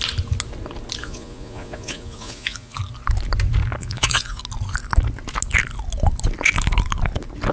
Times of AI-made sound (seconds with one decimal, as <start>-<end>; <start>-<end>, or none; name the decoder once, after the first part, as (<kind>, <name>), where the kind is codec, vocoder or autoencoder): 1.0-2.8 (vocoder, Vocos); 3.8-4.4